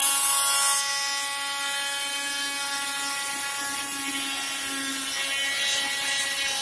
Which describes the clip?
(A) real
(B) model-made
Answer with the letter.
A